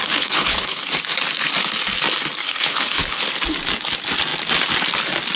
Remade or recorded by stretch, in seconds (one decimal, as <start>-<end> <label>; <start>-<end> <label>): 0.0-0.8 remade; 0.8-2.4 recorded; 2.4-3.2 remade; 3.2-5.4 recorded